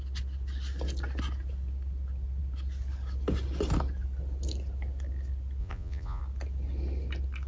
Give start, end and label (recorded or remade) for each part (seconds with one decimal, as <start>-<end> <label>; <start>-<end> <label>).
0.0-5.6 recorded; 5.6-6.2 remade; 6.2-7.5 recorded